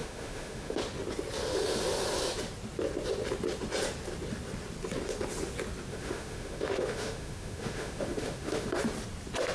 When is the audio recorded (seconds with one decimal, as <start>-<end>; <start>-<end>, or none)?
0.8-5.9; 8.8-9.5